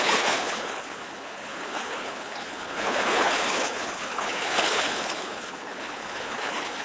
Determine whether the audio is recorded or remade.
remade